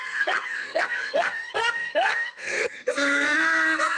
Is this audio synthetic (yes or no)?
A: yes